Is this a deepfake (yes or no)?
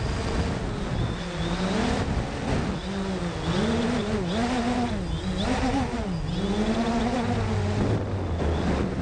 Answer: no